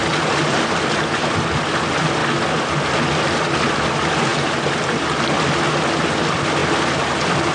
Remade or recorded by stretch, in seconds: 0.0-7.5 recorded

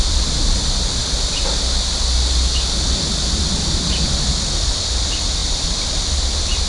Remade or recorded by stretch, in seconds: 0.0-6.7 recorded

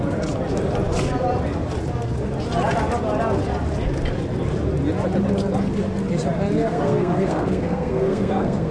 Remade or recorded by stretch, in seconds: 0.0-6.6 recorded; 6.6-8.7 remade